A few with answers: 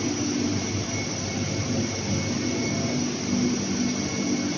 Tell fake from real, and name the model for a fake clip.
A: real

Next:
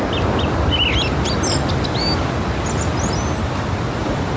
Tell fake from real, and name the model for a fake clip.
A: real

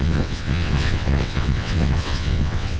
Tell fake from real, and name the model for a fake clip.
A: fake, vocoder, WaveNeXt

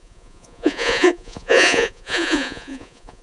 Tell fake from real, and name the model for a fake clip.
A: fake, vocoder, Vocos